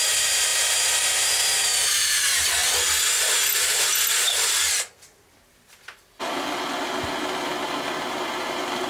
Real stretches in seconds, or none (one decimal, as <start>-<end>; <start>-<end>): 0.0-8.9